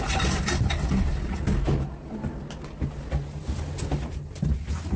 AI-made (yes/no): no